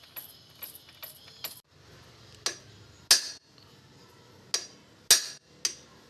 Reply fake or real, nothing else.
real